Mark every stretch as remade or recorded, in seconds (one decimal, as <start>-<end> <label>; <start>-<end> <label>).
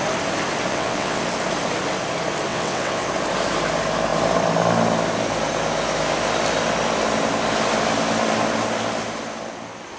0.0-0.7 recorded; 0.7-1.2 remade; 1.2-2.5 recorded; 2.5-3.1 remade; 3.1-10.0 recorded